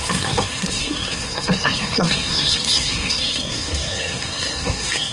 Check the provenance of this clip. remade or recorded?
remade